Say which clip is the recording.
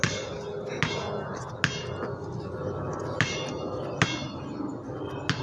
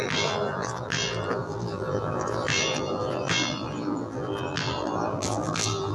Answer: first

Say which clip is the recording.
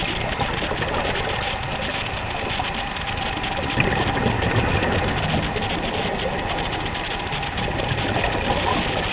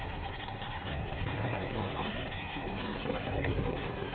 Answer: first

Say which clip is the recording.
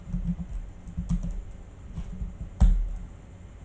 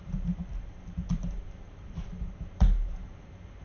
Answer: first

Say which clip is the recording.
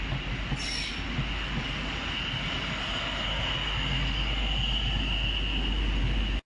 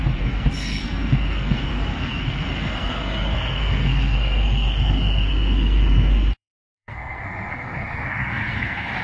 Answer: first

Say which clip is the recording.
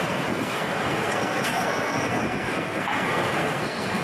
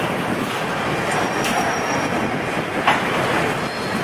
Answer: second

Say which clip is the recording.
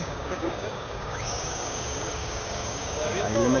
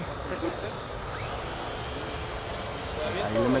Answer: second